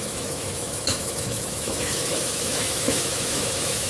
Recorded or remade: remade